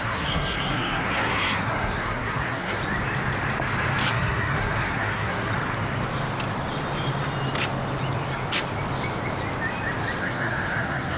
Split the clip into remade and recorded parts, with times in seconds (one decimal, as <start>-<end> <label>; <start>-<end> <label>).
0.0-2.8 remade; 2.8-4.1 recorded; 4.1-5.5 remade; 5.5-10.2 recorded; 10.2-11.2 remade